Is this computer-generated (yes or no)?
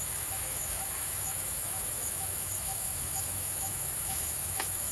yes